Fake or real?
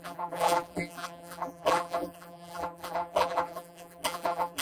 fake